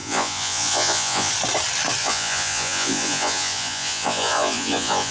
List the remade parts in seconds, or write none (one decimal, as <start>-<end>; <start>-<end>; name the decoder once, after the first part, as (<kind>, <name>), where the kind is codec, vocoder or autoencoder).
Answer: 0.0-1.3 (vocoder, Vocos); 2.0-5.1